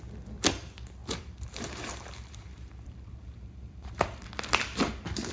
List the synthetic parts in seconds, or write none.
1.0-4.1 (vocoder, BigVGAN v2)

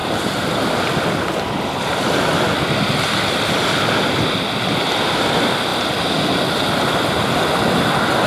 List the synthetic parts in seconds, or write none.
none